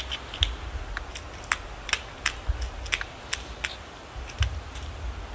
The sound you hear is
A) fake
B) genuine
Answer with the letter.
B